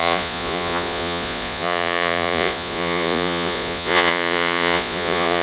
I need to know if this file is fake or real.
fake